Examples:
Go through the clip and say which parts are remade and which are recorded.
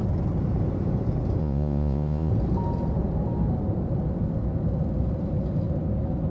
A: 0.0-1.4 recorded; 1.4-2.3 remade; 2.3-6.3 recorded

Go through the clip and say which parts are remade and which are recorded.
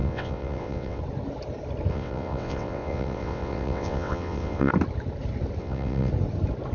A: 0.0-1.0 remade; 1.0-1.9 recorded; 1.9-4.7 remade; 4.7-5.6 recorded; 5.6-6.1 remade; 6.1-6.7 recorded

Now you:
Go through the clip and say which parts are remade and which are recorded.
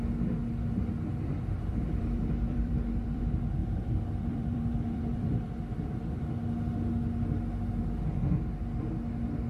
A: 0.0-0.4 recorded; 0.4-3.2 remade; 3.2-3.6 recorded; 3.6-6.2 remade; 6.2-9.5 recorded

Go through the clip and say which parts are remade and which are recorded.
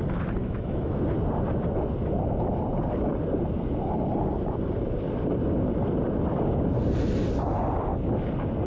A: 0.0-0.4 recorded; 0.4-1.0 remade; 1.0-8.7 recorded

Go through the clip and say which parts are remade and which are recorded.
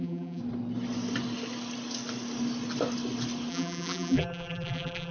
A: 0.0-0.4 remade; 0.4-3.5 recorded; 3.5-5.1 remade